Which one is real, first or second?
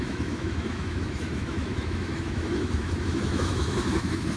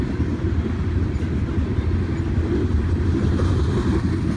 second